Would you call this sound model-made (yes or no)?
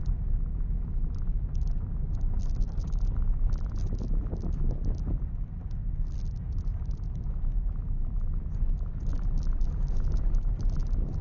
no